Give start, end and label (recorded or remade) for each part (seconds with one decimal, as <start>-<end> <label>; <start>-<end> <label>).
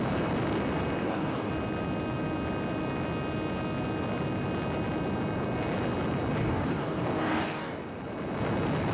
0.0-1.0 recorded; 1.0-1.5 remade; 1.5-6.4 recorded; 6.4-7.8 remade; 7.8-8.9 recorded